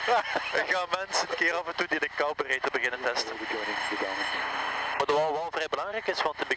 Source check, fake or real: real